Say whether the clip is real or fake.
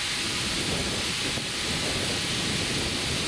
real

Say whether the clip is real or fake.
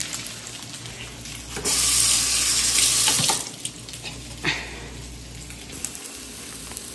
real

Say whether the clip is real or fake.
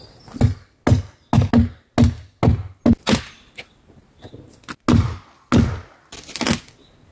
real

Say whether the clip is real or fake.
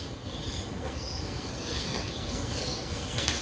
fake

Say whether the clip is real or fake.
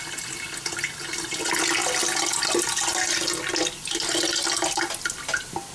real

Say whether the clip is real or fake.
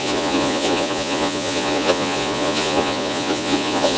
fake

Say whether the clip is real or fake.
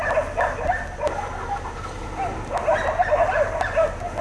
real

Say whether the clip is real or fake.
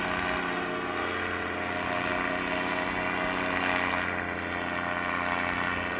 real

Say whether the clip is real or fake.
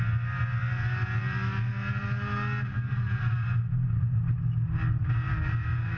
real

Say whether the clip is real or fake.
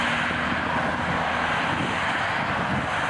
real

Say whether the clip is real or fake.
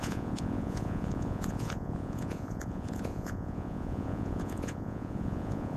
fake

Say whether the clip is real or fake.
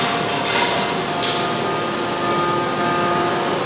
real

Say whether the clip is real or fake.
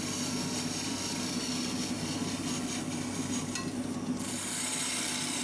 real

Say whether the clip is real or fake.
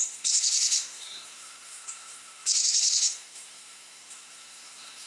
fake